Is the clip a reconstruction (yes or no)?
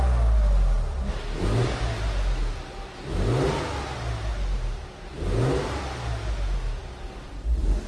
no